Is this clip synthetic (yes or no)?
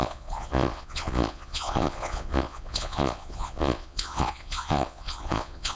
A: yes